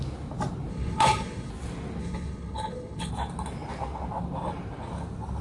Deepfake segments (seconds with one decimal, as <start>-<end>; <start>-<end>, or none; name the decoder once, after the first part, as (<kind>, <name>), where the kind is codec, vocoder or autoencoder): 0.7-1.5 (codec, HILCodec); 2.0-3.1